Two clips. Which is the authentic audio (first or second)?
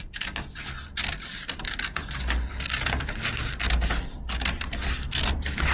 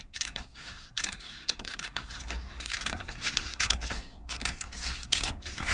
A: first